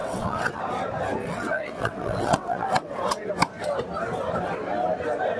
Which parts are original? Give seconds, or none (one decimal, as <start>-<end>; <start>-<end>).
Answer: 0.6-1.2; 3.3-5.4